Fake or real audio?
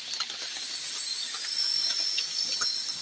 real